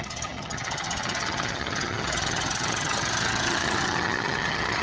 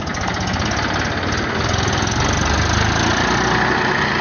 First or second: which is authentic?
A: second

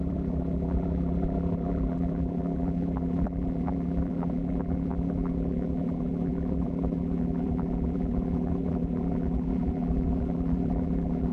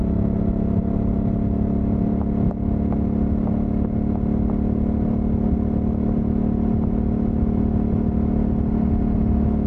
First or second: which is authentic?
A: second